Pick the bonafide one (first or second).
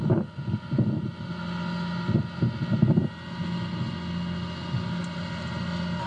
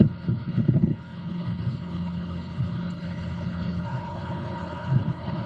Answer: first